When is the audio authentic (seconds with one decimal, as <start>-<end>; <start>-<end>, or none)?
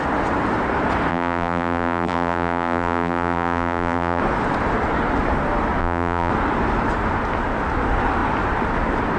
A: 0.0-1.1; 4.2-5.8; 6.3-9.2